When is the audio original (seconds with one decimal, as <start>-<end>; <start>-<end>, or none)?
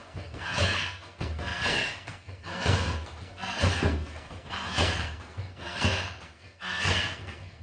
none